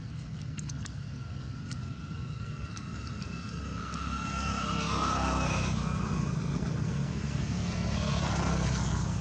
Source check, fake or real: fake